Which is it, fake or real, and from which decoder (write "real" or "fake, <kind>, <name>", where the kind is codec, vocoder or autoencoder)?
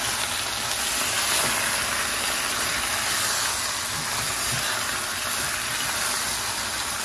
real